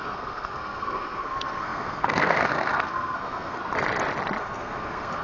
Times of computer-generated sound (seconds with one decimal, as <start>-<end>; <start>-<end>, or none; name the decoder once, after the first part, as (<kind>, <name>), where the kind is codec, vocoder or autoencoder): 0.0-3.6 (codec, SNAC); 4.4-5.2